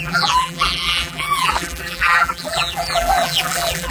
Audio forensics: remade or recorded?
remade